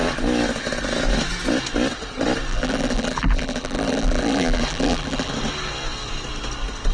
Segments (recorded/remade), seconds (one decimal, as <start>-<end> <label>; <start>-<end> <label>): 0.0-2.5 recorded; 2.5-5.3 remade; 5.3-6.9 recorded